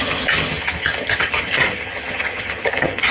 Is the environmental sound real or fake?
fake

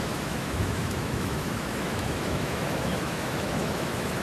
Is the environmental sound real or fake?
fake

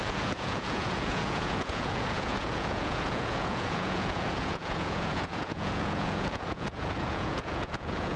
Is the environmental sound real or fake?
fake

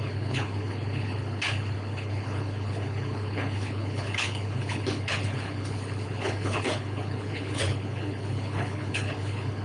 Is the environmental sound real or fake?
fake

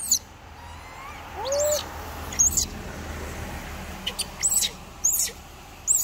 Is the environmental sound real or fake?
real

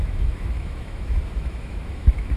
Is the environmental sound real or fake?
fake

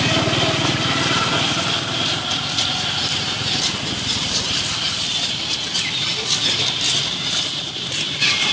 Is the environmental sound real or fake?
real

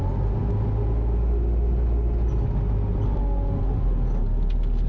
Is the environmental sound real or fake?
real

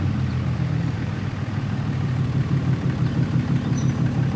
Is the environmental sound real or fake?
fake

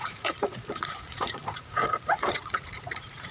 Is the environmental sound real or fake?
fake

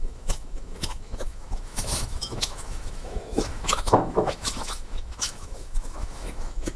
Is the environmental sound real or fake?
fake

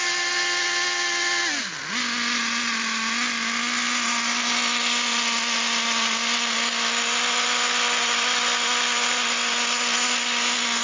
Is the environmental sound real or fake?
real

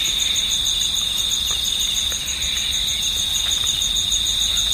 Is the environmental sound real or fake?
real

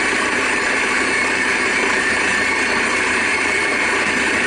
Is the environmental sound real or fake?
fake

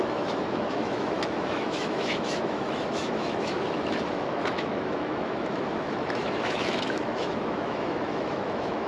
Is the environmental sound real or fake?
fake